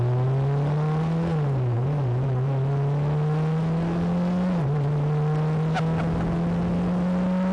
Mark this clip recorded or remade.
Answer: recorded